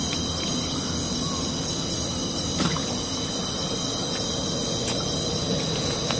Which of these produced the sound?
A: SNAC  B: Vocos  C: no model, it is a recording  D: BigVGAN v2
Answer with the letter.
C